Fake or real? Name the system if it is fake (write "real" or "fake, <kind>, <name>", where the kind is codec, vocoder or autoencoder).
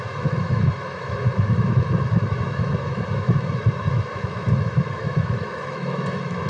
fake, autoencoder, DAC-VAE